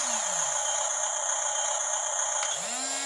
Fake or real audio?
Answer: real